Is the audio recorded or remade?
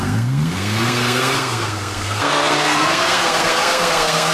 remade